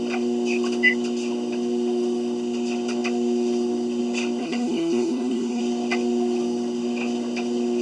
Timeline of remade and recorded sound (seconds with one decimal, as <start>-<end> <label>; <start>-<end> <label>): 0.0-4.4 recorded; 4.4-5.6 remade; 5.6-7.8 recorded